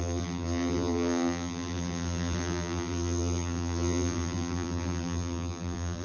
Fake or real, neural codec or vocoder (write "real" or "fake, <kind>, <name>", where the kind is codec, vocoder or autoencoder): fake, vocoder, BigVGAN v2